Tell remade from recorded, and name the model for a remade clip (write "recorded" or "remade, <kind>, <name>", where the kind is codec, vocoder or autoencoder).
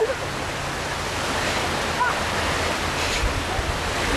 recorded